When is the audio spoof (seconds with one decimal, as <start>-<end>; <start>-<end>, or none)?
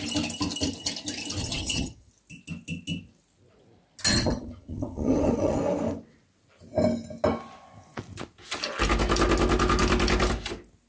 1.4-2.1; 4.1-5.6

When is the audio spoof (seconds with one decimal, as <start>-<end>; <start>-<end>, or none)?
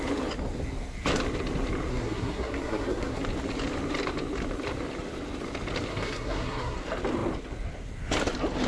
1.9-3.2; 5.9-6.8